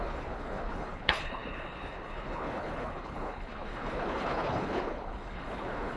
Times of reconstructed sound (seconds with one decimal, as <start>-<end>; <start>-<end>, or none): 0.0-6.0